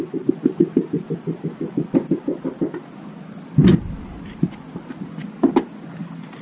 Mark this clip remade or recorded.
recorded